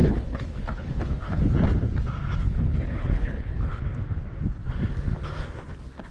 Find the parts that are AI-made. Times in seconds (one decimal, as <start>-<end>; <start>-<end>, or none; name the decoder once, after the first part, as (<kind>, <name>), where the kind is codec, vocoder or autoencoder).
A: 0.0-1.4 (codec, HILCodec); 2.4-3.8